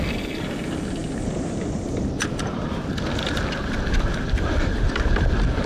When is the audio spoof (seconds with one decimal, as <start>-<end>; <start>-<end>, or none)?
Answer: none